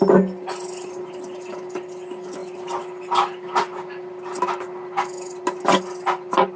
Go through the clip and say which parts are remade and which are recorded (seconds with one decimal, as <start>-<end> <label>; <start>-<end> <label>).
0.0-6.6 recorded